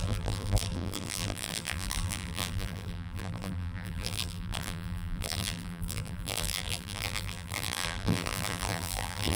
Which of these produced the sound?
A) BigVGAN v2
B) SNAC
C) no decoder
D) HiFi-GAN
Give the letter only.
A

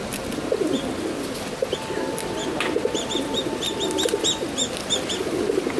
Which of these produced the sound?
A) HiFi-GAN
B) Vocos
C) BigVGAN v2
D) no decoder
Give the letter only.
D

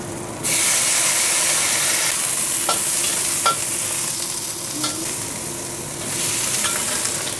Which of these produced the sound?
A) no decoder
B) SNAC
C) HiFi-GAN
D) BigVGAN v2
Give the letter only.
A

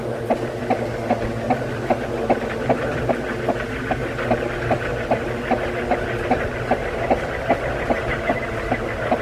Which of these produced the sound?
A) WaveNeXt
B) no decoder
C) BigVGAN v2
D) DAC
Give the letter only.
B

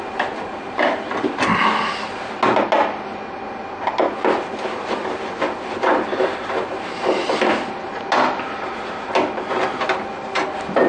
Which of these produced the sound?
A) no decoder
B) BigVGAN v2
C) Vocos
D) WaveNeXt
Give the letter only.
A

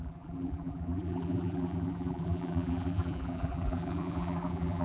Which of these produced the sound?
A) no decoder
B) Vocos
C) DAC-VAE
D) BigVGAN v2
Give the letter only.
D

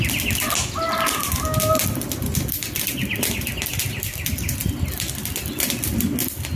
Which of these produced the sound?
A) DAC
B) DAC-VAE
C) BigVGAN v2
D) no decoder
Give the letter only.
D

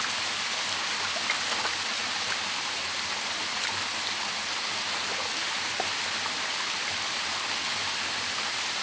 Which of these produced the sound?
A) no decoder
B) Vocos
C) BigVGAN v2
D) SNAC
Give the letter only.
A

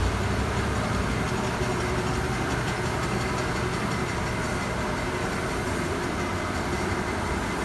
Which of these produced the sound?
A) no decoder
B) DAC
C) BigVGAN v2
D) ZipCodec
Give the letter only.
C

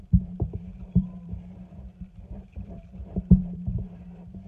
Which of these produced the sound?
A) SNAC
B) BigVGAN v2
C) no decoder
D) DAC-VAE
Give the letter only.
B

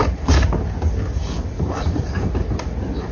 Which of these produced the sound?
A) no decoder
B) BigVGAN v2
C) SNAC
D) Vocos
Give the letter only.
B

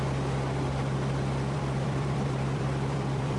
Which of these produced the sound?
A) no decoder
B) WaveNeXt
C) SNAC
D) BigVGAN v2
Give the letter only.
D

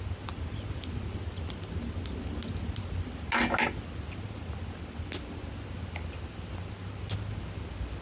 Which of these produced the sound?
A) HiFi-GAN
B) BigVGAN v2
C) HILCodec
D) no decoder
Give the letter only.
D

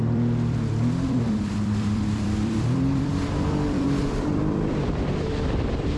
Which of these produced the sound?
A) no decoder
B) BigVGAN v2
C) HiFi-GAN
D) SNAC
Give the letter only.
B